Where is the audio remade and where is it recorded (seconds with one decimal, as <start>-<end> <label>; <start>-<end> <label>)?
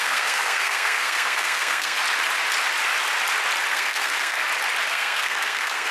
0.0-2.0 remade; 2.0-3.7 recorded; 3.7-4.4 remade; 4.4-4.9 recorded; 4.9-5.9 remade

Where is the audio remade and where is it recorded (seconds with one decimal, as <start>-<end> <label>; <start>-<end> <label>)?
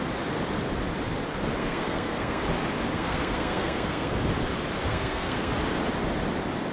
0.0-1.6 recorded; 1.6-2.4 remade; 2.4-2.9 recorded; 2.9-4.2 remade; 4.2-4.9 recorded; 4.9-5.5 remade; 5.5-6.7 recorded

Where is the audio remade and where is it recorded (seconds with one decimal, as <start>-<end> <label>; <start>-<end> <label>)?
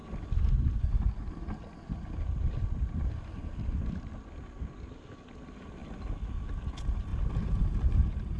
0.0-8.4 recorded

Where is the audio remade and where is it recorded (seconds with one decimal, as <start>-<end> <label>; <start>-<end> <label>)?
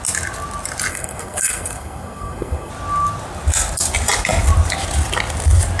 0.0-0.9 recorded; 0.9-2.7 remade; 2.7-5.8 recorded